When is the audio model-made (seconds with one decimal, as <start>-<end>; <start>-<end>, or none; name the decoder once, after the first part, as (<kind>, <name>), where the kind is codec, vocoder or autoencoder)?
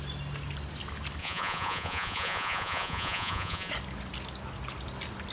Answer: 1.2-3.7 (vocoder, Vocos)